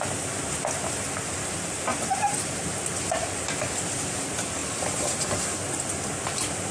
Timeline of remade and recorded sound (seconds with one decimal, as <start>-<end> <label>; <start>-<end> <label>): 0.0-1.9 recorded; 1.9-3.3 remade; 3.3-6.7 recorded